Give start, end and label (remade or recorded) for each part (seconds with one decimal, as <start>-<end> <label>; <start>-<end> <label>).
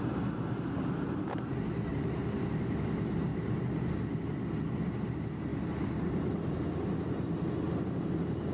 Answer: 0.0-1.9 recorded; 1.9-2.8 remade; 2.8-3.3 recorded; 3.3-3.9 remade; 3.9-8.5 recorded